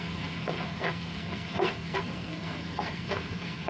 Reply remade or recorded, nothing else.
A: remade